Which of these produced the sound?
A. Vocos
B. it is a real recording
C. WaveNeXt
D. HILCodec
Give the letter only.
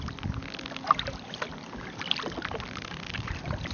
B